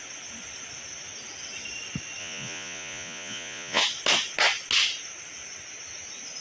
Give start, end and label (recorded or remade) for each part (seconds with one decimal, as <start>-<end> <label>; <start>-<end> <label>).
0.0-2.2 recorded; 2.2-3.8 remade; 3.8-6.4 recorded